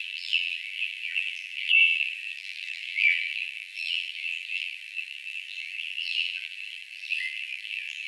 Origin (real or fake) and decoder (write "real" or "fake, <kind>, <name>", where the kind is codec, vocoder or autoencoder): fake, vocoder, BigVGAN v2